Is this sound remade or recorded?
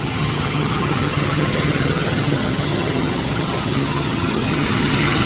remade